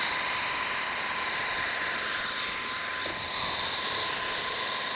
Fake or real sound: real